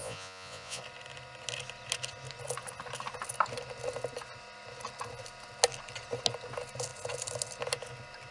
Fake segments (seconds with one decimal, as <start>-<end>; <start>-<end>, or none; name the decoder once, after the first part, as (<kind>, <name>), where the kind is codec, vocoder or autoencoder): 0.0-0.8 (vocoder, Vocos)